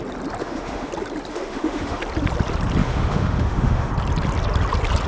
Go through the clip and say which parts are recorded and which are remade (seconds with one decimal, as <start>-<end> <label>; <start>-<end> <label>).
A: 0.0-0.4 recorded; 0.4-0.9 remade; 0.9-1.3 recorded; 1.3-2.0 remade; 2.0-2.8 recorded; 2.8-3.9 remade; 3.9-5.1 recorded